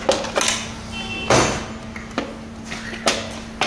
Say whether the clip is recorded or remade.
recorded